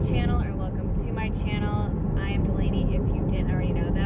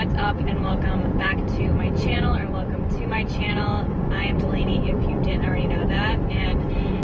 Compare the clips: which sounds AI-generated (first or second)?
second